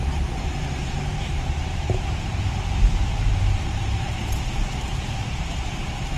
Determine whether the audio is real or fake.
fake